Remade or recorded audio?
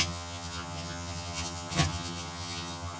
remade